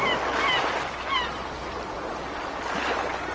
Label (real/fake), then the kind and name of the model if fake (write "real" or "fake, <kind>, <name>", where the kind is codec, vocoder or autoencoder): real